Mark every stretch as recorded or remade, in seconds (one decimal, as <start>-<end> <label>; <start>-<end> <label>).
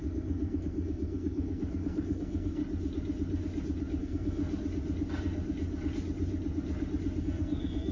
0.0-2.6 remade; 2.6-4.0 recorded; 4.0-4.4 remade; 4.4-7.2 recorded; 7.2-7.9 remade